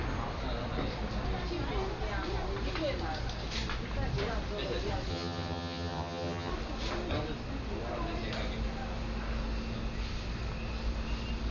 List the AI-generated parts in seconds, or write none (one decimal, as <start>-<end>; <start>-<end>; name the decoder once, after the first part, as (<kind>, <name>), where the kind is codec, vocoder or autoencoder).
5.1-6.5 (vocoder, HiFi-GAN)